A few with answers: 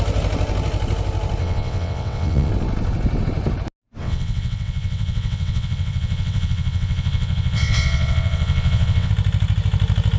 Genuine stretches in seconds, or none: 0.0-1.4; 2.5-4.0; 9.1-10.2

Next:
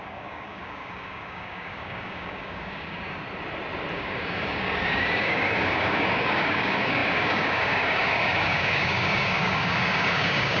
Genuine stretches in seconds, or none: 3.2-3.9

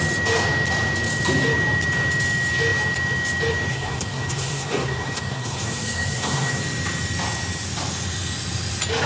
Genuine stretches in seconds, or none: 0.0-3.7; 6.6-9.1